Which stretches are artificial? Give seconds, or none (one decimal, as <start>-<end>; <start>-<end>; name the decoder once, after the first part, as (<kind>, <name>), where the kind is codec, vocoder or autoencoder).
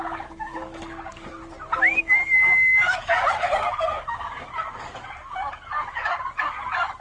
0.0-1.4 (codec, DAC); 2.0-7.0